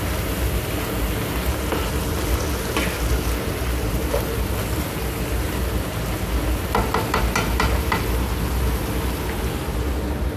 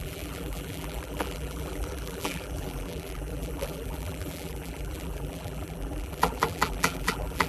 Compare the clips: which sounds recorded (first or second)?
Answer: first